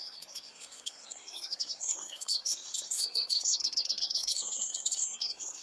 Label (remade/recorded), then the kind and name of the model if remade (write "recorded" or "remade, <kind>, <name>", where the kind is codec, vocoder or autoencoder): remade, codec, SNAC